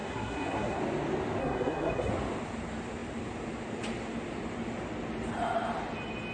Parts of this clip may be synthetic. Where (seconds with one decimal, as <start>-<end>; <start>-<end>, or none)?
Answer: 0.0-0.8; 1.4-2.1